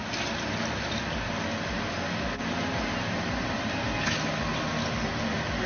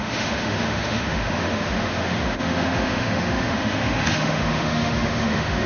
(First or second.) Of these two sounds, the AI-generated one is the second